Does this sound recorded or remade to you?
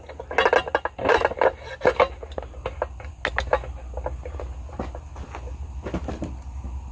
recorded